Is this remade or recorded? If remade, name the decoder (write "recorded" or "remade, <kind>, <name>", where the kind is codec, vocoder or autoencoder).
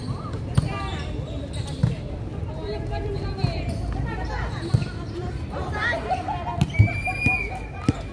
recorded